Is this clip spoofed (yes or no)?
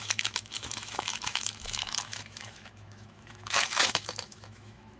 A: yes